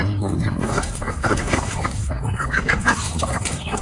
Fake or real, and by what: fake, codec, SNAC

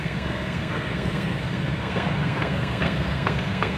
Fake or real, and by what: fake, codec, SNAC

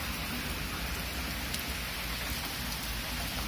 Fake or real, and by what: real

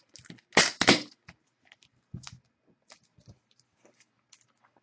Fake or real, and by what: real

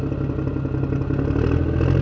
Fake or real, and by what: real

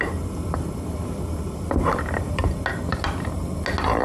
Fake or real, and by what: real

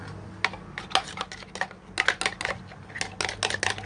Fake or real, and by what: real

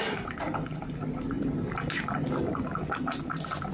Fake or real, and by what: real